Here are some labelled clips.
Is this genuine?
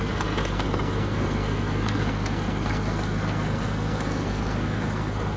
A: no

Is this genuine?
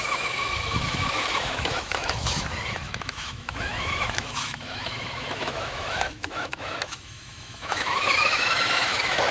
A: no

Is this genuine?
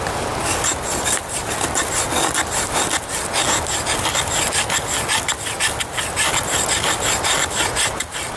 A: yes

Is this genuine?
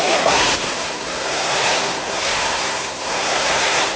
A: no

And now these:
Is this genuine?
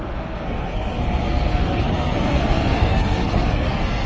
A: no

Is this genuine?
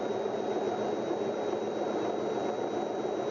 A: yes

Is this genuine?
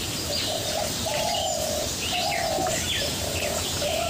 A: no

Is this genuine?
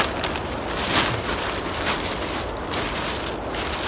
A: yes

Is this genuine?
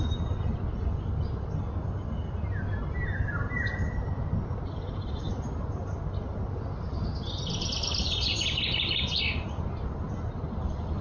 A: yes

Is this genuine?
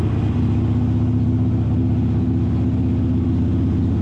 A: yes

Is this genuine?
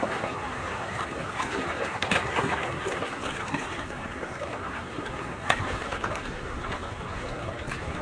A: no